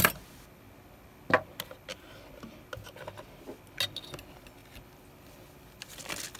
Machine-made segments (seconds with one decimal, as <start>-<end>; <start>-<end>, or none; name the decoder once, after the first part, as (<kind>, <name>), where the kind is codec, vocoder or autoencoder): none